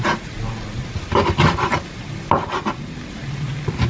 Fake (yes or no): no